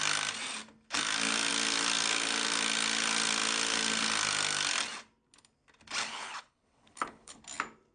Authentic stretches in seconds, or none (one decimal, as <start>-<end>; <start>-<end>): 0.0-6.0; 7.4-7.9